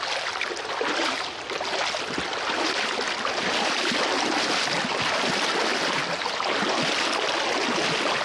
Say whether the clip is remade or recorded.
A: recorded